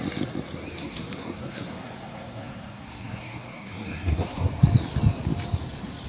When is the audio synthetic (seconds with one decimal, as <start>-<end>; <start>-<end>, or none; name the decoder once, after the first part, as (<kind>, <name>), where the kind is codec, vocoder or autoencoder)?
0.8-4.5 (codec, SNAC)